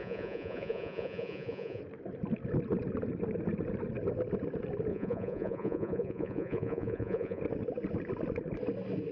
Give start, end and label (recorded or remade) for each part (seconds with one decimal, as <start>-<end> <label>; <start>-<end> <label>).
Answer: 0.0-1.8 remade; 1.8-4.9 recorded; 4.9-7.4 remade; 7.4-9.1 recorded